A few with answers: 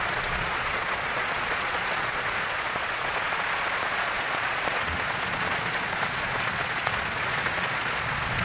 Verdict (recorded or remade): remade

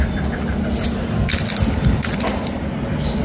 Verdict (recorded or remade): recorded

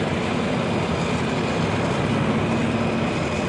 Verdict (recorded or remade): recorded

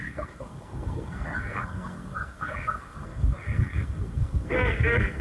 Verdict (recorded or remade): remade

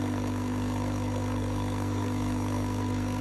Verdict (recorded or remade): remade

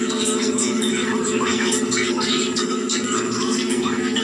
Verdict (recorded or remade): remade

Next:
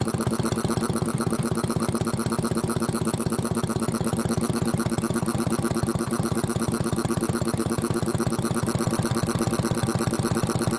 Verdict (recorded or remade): recorded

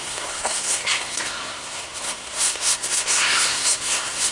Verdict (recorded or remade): remade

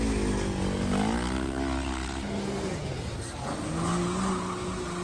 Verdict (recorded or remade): recorded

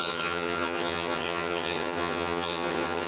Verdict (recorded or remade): remade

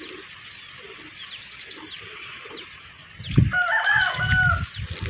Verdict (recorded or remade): recorded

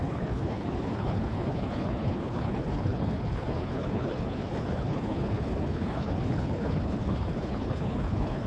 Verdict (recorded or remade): remade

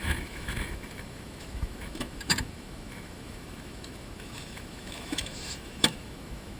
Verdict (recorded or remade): remade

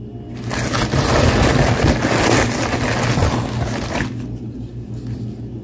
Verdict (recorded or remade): recorded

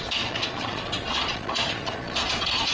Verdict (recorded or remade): remade